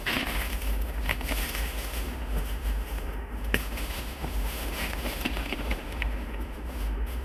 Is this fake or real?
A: fake